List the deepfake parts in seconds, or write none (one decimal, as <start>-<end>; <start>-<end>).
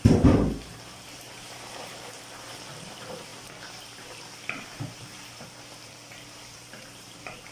0.0-7.5